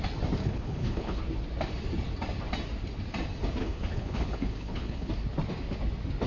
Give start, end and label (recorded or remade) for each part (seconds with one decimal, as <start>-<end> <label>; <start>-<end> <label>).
0.0-0.4 recorded; 0.4-1.2 remade; 1.2-3.6 recorded; 3.6-5.1 remade; 5.1-6.3 recorded